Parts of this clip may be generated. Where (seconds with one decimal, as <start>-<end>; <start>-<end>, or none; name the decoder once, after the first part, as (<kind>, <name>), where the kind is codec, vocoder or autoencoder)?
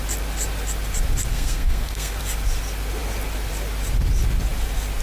1.3-2.2 (codec, SNAC)